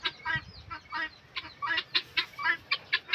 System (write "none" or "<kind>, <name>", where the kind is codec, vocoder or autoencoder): none